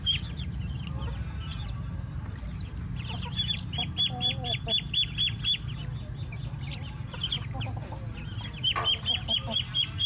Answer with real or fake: real